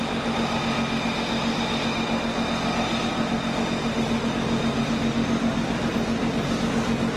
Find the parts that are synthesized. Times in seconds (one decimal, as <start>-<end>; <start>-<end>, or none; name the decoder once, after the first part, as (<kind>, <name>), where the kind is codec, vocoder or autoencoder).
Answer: none